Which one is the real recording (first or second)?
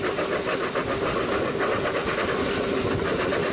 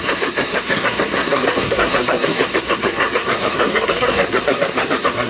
first